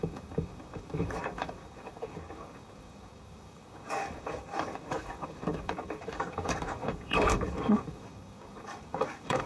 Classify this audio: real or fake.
fake